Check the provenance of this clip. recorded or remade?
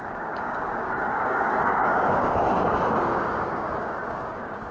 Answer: remade